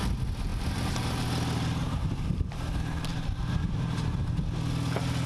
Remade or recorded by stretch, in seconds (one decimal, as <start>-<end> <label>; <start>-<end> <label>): 0.0-0.5 recorded; 0.5-1.2 remade; 1.2-1.8 recorded; 1.8-2.5 remade; 2.5-3.1 recorded; 3.1-4.4 remade; 4.4-5.3 recorded